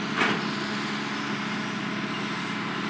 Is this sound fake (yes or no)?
no